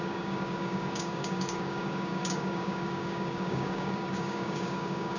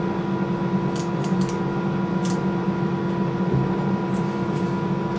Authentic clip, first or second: second